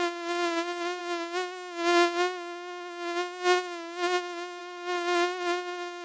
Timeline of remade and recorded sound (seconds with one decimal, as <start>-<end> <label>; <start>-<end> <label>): 0.0-1.0 recorded; 1.0-4.6 remade; 4.6-6.0 recorded